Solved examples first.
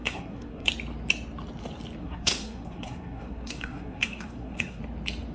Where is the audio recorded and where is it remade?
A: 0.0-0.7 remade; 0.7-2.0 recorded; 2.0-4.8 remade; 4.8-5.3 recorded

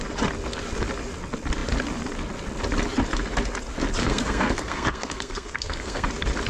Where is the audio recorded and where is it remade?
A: 0.0-4.0 recorded; 4.0-6.1 remade; 6.1-6.5 recorded

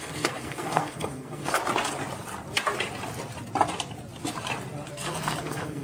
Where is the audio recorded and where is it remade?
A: 0.0-1.6 remade; 1.6-4.9 recorded; 4.9-5.8 remade

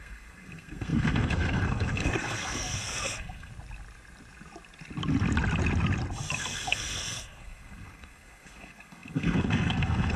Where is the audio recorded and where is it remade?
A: 0.0-3.5 remade; 3.5-6.4 recorded; 6.4-10.2 remade

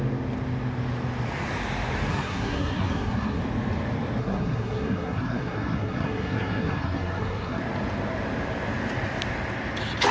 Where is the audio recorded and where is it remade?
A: 0.0-2.1 recorded; 2.1-3.4 remade; 3.4-4.2 recorded; 4.2-7.6 remade; 7.6-10.1 recorded

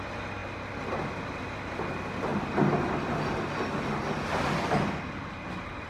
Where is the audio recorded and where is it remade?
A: 0.0-5.9 recorded

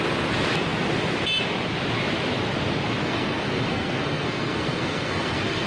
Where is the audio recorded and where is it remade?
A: 0.0-3.0 recorded; 3.0-5.7 remade

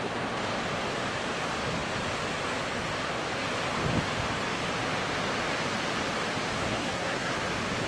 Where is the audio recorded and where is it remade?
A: 0.0-6.6 recorded; 6.6-7.3 remade; 7.3-7.9 recorded